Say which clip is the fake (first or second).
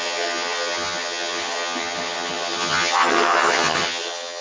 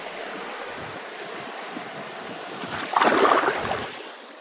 first